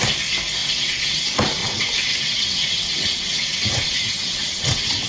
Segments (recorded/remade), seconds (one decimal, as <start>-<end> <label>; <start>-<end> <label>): 0.0-0.6 recorded; 0.6-1.2 remade; 1.2-1.6 recorded; 1.6-5.1 remade